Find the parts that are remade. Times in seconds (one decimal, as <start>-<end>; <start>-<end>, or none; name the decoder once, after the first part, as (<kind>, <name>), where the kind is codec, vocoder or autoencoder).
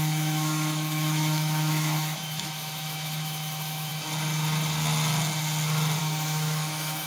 0.0-3.9 (autoencoder, DAC-VAE); 6.0-7.1